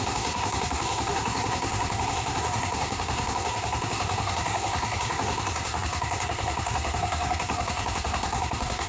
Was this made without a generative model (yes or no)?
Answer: no